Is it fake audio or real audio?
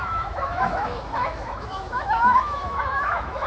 fake